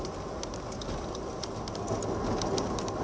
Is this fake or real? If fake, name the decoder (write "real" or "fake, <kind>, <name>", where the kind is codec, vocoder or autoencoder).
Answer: real